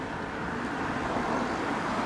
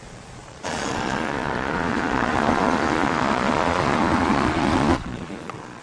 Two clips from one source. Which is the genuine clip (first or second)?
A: first